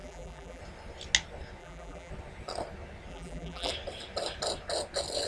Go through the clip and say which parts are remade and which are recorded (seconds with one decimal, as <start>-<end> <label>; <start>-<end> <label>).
0.0-0.6 remade; 0.6-1.6 recorded; 1.6-2.1 remade; 2.1-3.1 recorded; 3.1-3.7 remade; 3.7-5.3 recorded